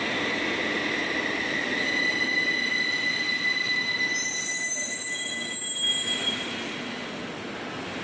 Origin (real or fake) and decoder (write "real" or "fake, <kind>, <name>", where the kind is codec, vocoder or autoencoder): real